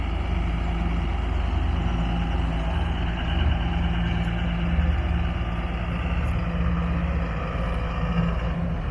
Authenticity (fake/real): real